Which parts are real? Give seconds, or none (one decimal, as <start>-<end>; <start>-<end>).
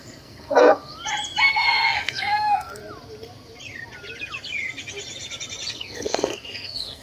0.9-1.5; 2.8-5.7